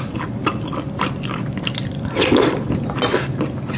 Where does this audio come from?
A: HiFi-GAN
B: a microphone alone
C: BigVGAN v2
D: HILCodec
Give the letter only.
B